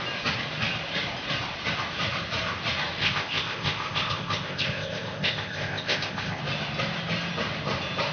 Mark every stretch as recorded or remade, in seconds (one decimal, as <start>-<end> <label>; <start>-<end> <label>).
0.0-3.0 recorded; 3.0-6.4 remade; 6.4-8.1 recorded